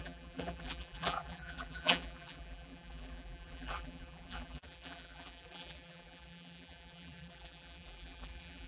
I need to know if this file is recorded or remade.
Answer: remade